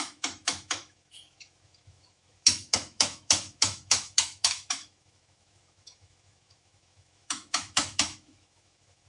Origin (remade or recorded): remade